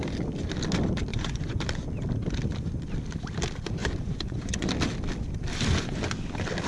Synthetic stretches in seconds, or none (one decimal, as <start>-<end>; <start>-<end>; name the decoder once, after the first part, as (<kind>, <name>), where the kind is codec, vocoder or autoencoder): 1.1-1.6 (vocoder, Vocos); 3.8-4.7